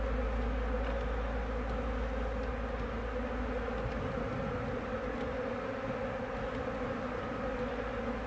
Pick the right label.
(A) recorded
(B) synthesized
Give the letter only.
A